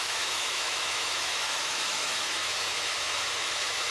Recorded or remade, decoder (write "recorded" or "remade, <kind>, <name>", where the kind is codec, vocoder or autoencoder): remade, autoencoder, DAC-VAE